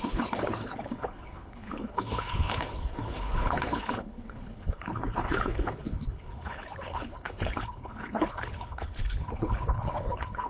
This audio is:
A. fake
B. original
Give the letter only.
A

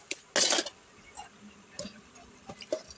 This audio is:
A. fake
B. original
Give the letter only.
B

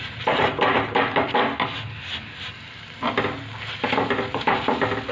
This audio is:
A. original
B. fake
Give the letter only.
A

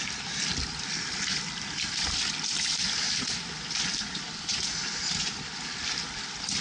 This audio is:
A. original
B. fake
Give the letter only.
A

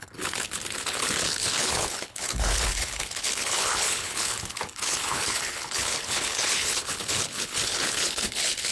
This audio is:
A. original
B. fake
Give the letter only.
B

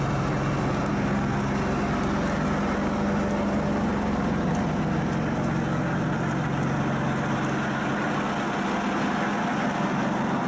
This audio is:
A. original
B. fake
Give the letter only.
A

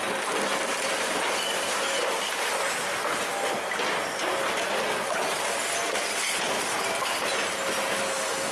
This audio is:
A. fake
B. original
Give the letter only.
B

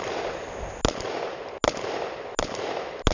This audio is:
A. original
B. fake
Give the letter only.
A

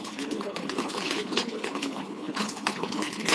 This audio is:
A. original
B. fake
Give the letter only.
B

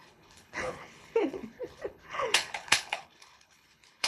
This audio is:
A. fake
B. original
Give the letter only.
A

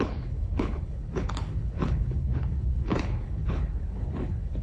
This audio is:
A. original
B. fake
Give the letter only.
B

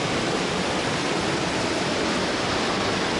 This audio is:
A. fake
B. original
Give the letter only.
B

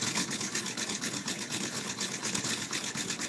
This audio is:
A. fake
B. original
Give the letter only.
A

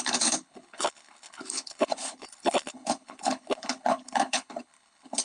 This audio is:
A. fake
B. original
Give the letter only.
A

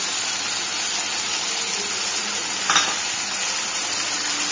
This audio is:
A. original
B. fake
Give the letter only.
A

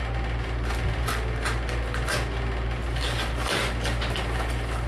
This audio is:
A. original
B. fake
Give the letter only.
A